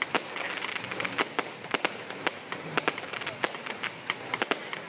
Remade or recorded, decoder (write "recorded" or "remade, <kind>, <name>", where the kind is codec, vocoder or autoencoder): recorded